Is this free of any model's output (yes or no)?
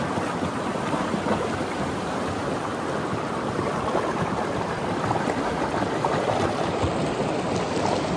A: no